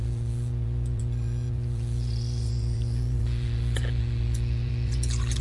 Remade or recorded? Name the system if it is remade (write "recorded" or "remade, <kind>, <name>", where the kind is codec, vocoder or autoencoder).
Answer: remade, vocoder, Vocos